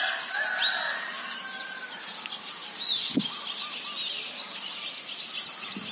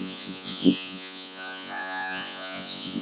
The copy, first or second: second